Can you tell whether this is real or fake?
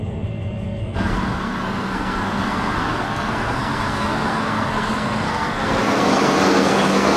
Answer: fake